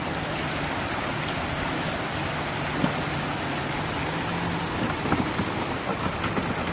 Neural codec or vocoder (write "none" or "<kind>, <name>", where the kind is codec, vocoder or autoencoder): none